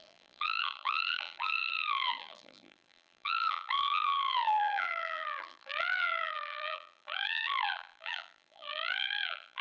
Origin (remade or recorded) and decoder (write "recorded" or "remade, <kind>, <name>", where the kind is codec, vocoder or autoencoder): remade, vocoder, BigVGAN v2